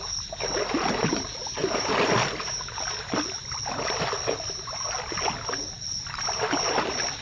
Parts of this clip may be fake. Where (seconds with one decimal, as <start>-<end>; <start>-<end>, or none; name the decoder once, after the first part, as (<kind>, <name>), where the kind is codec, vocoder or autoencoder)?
none